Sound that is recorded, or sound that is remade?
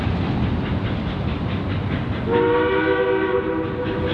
recorded